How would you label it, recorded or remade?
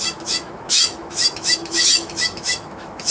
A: remade